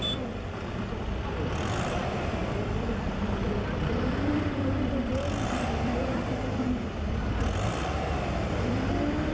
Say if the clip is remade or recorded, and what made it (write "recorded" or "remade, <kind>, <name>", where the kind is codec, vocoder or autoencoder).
remade, vocoder, BigVGAN v2